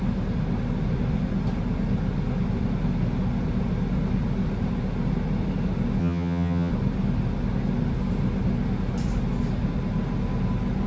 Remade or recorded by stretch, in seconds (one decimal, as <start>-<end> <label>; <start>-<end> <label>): 0.0-6.0 recorded; 6.0-6.7 remade; 6.7-10.9 recorded